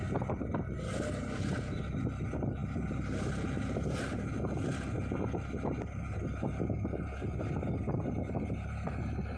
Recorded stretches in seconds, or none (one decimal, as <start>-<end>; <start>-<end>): 0.0-9.4